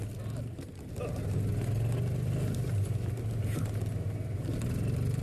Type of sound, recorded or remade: recorded